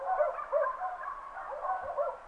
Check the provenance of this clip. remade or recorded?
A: recorded